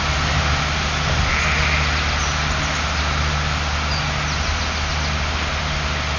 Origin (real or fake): real